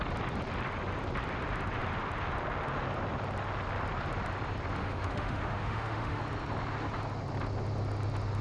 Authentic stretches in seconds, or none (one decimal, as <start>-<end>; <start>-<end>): 0.0-4.8; 6.2-8.4